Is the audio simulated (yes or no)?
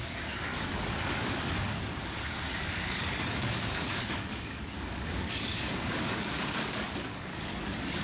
yes